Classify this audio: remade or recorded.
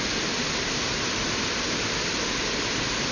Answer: recorded